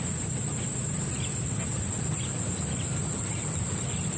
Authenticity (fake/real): fake